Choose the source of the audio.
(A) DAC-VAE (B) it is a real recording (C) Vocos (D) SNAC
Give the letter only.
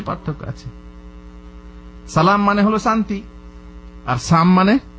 B